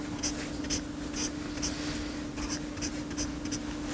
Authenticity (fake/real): real